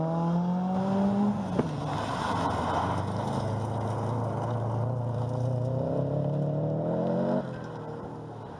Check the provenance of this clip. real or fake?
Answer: real